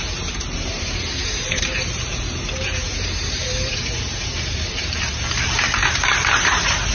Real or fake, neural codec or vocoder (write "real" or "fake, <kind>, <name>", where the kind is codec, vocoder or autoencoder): fake, vocoder, BigVGAN v2